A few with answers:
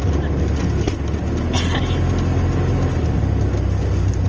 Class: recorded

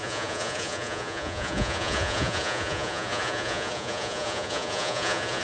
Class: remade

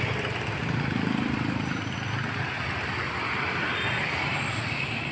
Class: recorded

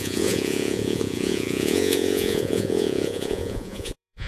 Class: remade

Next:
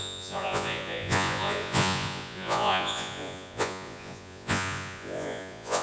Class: remade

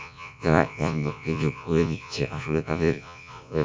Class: remade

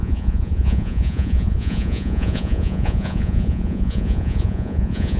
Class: remade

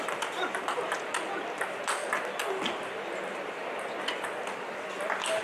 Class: recorded